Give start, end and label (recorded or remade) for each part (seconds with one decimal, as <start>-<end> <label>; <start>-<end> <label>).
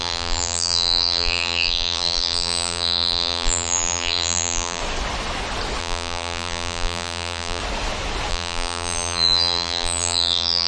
0.0-4.8 remade; 4.8-5.8 recorded; 5.8-7.6 remade; 7.6-8.3 recorded; 8.3-10.7 remade